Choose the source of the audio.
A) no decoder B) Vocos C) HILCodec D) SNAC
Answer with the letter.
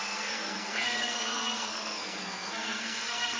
D